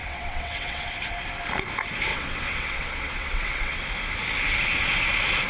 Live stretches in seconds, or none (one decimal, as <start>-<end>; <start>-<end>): 0.9-2.1; 3.8-5.5